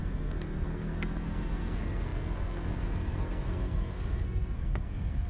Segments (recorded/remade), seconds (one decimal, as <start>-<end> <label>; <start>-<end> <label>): 0.0-5.3 remade

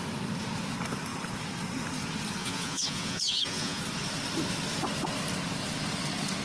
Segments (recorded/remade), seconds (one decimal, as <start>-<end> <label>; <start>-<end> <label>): 0.0-2.4 recorded; 2.4-3.8 remade; 3.8-6.4 recorded